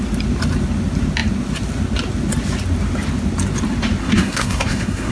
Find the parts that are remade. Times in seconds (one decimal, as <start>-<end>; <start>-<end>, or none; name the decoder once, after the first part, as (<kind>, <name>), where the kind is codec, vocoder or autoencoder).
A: 4.0-5.1 (codec, SNAC)